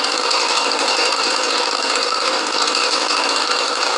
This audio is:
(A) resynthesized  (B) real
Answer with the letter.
A